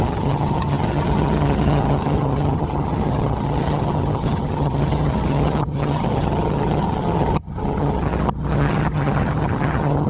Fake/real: fake